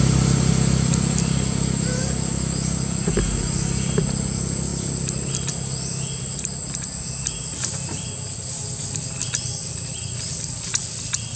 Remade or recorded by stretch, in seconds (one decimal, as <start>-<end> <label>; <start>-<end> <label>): 0.0-11.4 recorded